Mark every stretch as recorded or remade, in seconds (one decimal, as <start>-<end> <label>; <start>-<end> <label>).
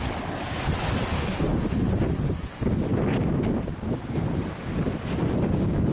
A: 0.0-1.1 recorded; 1.1-1.6 remade; 1.6-5.9 recorded